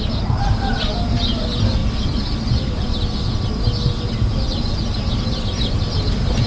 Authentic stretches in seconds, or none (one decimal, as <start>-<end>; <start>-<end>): 0.0-6.5